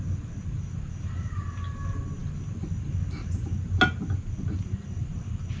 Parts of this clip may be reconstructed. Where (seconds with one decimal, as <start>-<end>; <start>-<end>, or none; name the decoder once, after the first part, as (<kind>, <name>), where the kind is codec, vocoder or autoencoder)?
none